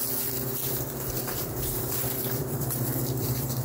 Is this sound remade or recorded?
remade